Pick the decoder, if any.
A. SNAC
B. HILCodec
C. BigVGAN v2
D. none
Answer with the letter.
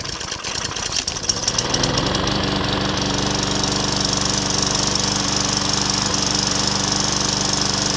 D